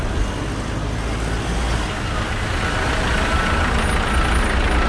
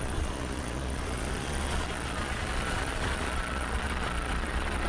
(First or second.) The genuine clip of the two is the first